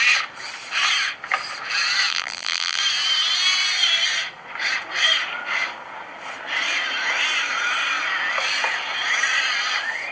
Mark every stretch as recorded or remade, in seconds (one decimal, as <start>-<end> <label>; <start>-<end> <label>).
0.0-2.1 recorded; 2.1-2.8 remade; 2.8-10.1 recorded